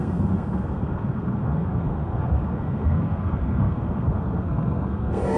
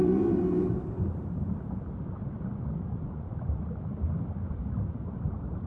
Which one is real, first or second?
second